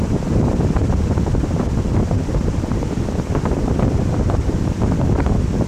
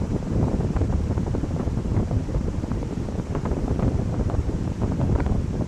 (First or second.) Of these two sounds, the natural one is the first